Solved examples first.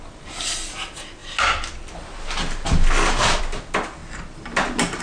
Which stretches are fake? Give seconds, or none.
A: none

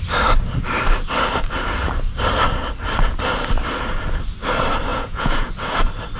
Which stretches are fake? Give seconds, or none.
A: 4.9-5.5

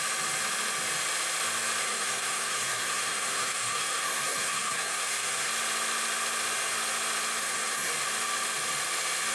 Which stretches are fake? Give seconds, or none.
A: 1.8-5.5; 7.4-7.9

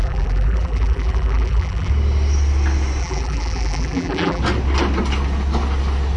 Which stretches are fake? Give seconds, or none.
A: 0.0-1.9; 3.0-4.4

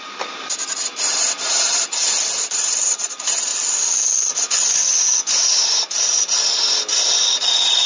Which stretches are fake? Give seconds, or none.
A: 0.0-3.5; 7.4-7.9

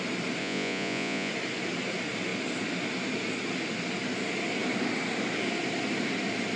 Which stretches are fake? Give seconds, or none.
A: 0.4-1.3

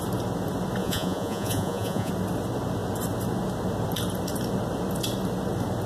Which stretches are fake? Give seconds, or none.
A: 0.8-2.1